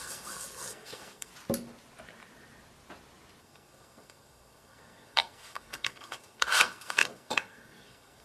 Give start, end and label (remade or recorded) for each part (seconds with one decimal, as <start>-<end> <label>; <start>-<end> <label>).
0.0-1.3 remade; 1.3-3.4 recorded; 3.4-8.2 remade

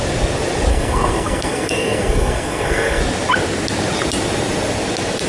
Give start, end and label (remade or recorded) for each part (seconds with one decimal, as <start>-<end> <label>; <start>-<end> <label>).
0.0-0.7 recorded; 0.7-3.0 remade; 3.0-5.3 recorded

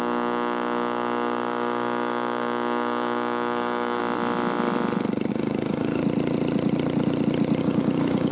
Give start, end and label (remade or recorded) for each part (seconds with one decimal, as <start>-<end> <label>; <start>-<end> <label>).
0.0-4.0 remade; 4.0-5.3 recorded; 5.3-6.0 remade; 6.0-7.6 recorded; 7.6-8.3 remade